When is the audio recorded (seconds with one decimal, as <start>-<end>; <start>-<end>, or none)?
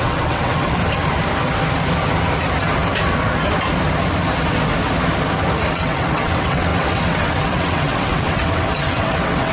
0.8-5.7